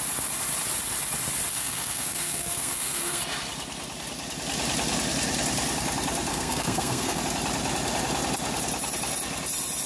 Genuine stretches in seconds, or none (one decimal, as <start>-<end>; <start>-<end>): 0.0-1.5; 3.2-6.3; 7.2-9.9